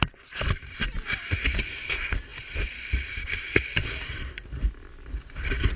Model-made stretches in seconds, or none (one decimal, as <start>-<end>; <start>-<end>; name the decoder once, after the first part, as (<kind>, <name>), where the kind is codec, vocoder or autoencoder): none